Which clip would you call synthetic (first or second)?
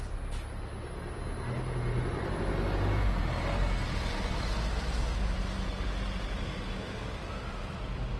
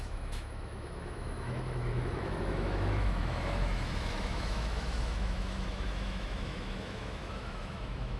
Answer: second